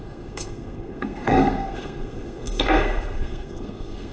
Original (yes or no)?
no